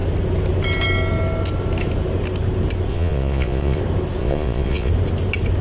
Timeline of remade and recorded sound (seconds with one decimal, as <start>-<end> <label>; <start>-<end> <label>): 0.0-2.9 recorded; 2.9-3.8 remade; 3.8-4.2 recorded; 4.2-4.9 remade; 4.9-5.6 recorded